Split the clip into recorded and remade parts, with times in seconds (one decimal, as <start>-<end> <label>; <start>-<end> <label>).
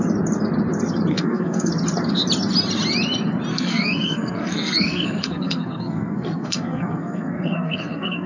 0.0-1.1 recorded; 1.1-1.7 remade; 1.7-3.5 recorded; 3.5-8.3 remade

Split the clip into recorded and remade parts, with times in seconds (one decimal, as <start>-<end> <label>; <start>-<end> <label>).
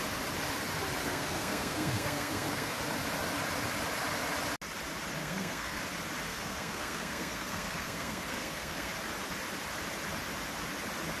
0.0-1.0 recorded; 1.0-2.8 remade; 2.8-5.2 recorded; 5.2-5.8 remade; 5.8-6.3 recorded; 6.3-8.9 remade; 8.9-11.2 recorded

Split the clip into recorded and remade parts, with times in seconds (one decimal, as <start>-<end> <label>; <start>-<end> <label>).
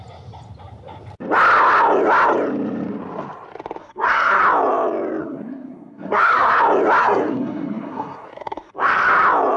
0.0-3.8 recorded; 3.8-4.4 remade; 4.4-5.2 recorded; 5.2-6.6 remade; 6.6-7.0 recorded; 7.0-8.7 remade; 8.7-9.6 recorded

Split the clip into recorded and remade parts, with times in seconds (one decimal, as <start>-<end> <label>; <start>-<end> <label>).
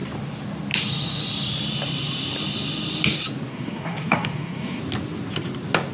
0.0-3.5 recorded; 3.5-4.8 remade; 4.8-5.9 recorded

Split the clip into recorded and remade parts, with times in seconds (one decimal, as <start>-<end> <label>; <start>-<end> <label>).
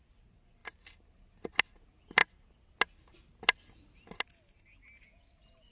0.0-5.7 recorded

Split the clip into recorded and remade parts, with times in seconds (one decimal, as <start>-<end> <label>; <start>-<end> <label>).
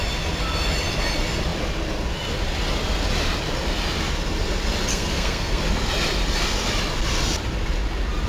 0.0-4.9 recorded; 4.9-5.6 remade; 5.6-8.3 recorded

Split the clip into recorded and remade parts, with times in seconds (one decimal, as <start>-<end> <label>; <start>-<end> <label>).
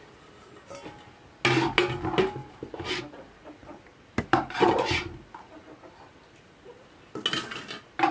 0.0-8.1 recorded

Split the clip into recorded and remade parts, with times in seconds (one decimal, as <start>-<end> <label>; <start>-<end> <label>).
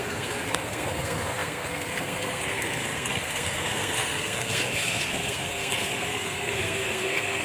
0.0-7.4 remade